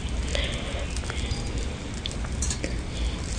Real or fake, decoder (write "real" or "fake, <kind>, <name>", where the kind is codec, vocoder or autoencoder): real